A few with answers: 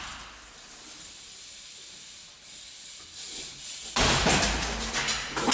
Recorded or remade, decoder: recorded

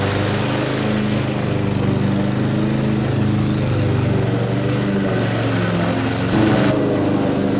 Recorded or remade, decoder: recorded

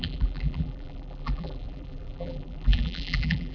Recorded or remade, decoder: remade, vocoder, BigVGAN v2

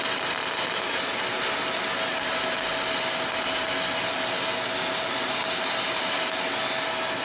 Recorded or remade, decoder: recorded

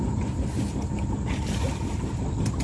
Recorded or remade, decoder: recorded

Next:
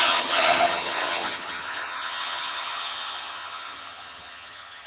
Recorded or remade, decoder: remade, vocoder, HiFi-GAN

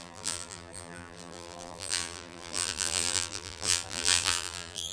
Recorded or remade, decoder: remade, vocoder, BigVGAN v2